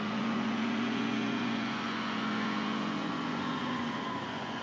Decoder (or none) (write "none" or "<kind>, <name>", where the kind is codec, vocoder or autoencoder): vocoder, Vocos